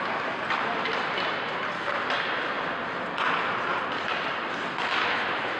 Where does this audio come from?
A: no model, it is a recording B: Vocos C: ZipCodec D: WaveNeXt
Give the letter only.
A